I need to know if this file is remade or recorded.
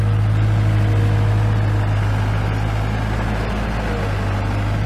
recorded